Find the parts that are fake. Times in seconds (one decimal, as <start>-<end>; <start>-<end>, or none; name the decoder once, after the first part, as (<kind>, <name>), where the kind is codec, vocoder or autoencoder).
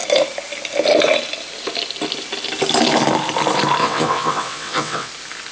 3.8-5.1 (vocoder, WaveNeXt)